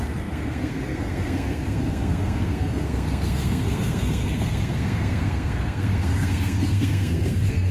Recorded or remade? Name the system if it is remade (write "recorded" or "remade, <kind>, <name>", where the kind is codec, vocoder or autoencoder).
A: remade, codec, SNAC